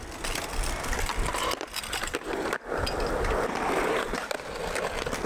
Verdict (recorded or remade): recorded